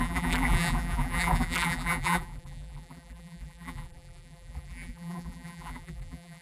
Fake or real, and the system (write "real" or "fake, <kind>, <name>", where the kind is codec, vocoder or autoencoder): fake, vocoder, BigVGAN v2